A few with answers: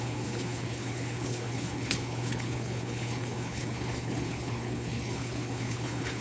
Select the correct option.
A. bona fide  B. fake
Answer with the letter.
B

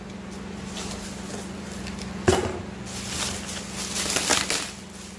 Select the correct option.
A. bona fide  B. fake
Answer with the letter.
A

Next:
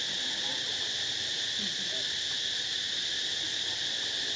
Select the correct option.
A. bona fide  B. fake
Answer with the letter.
A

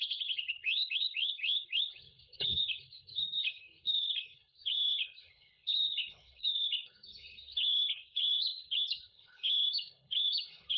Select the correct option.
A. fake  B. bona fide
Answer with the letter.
A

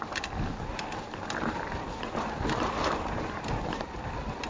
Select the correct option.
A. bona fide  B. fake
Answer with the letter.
A